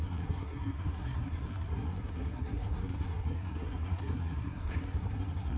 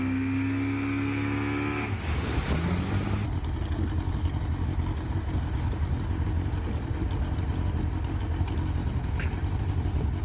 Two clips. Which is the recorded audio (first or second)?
second